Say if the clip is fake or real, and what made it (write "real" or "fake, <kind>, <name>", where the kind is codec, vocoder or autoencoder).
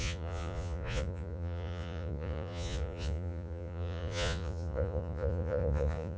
fake, vocoder, Vocos